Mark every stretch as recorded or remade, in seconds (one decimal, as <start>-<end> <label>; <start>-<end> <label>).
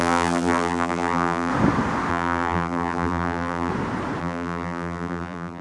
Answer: 0.0-1.5 remade; 1.5-2.1 recorded; 2.1-3.7 remade; 3.7-4.2 recorded; 4.2-5.6 remade